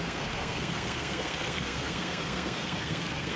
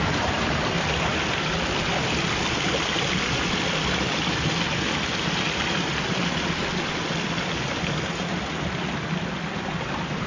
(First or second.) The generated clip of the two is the first